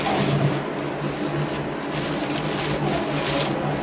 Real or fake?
real